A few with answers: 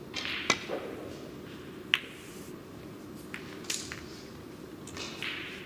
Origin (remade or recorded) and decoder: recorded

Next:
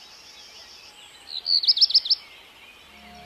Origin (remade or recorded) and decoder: recorded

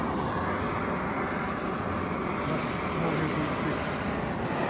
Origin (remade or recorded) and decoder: recorded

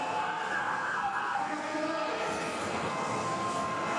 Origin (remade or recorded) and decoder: remade, codec, SNAC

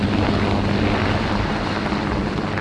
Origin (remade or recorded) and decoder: recorded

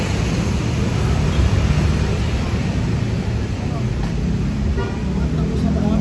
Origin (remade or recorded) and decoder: recorded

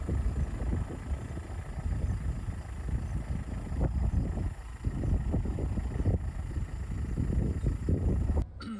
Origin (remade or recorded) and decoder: recorded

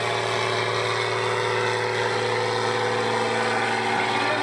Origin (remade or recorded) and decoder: recorded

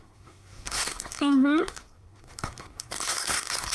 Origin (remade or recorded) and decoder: remade, codec, SNAC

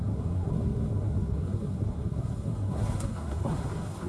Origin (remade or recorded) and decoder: remade, codec, SNAC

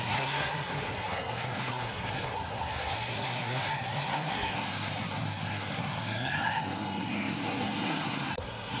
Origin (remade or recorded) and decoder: remade, codec, SNAC